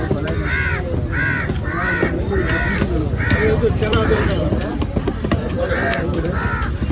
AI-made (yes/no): yes